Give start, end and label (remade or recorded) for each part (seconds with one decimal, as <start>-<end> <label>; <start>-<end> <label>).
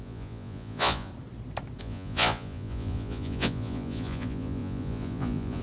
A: 0.0-1.1 remade; 1.1-1.8 recorded; 1.8-5.6 remade